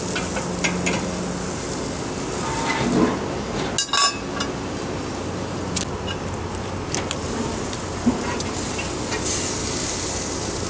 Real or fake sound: real